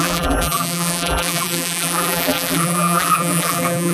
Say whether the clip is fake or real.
fake